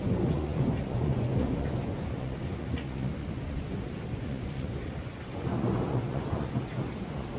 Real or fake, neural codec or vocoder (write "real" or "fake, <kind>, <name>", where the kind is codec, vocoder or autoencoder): fake, vocoder, Vocos